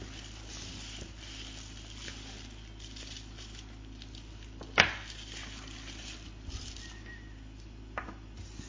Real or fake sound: real